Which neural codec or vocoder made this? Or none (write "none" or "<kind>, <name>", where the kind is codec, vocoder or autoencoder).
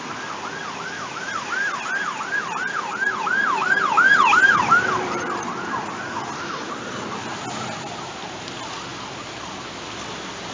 none